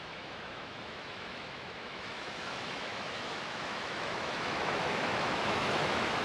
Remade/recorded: remade